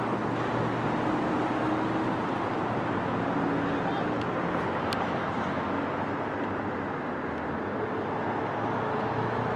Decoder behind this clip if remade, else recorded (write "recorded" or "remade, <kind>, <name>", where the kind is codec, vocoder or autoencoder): recorded